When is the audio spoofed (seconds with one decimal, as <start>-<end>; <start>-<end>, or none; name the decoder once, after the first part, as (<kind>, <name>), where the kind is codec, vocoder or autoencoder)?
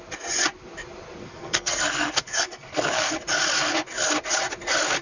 1.2-3.1 (codec, SNAC)